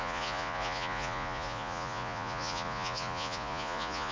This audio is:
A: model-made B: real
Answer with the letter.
A